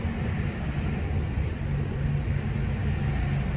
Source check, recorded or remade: recorded